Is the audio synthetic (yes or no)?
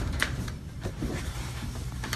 yes